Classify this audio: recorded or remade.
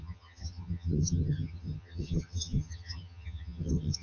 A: remade